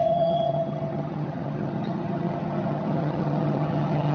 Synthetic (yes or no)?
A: yes